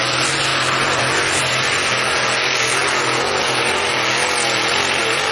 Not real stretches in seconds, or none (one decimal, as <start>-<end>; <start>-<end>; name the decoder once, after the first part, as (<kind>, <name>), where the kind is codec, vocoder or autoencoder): none